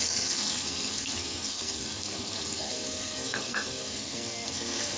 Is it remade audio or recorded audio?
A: remade